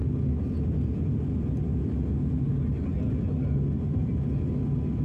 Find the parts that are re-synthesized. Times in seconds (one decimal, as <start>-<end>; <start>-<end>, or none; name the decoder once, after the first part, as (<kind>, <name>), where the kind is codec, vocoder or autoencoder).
none